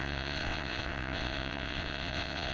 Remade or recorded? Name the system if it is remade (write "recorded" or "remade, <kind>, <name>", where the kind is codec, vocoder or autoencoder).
remade, vocoder, WaveNeXt